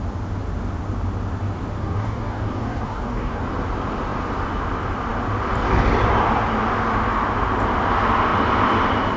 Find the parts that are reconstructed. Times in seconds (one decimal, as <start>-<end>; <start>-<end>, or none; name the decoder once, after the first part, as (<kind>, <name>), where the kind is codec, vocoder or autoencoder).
1.8-3.4 (codec, DAC)